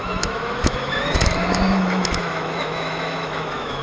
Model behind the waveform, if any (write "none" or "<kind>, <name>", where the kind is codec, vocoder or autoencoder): autoencoder, DAC-VAE